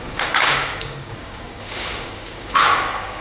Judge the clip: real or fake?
fake